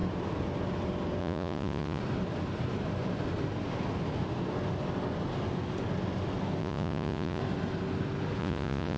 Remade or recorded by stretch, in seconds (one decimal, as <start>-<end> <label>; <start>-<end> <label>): 0.0-1.2 recorded; 1.2-2.0 remade; 2.0-6.6 recorded; 6.6-7.4 remade; 7.4-8.4 recorded; 8.4-9.0 remade